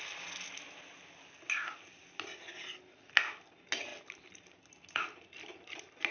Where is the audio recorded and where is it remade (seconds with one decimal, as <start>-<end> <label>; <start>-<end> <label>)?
0.0-6.1 recorded